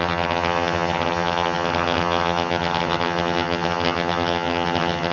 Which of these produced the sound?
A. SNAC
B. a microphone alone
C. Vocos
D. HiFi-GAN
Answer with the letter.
D